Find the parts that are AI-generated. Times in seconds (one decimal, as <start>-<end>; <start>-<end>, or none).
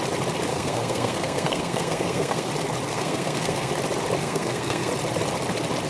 0.5-2.5; 2.9-3.7; 4.2-4.9